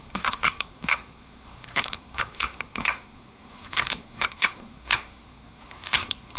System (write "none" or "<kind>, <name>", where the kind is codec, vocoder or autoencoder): codec, SNAC